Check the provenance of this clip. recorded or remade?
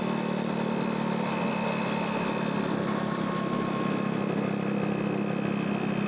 recorded